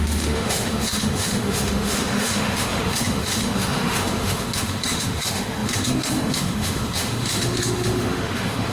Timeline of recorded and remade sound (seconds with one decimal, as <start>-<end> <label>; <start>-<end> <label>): 0.0-8.7 remade